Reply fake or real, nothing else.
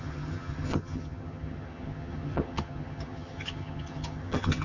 fake